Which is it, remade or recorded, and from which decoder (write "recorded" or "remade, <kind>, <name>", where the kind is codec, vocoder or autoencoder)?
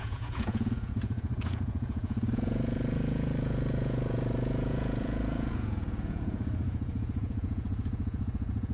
remade, vocoder, Vocos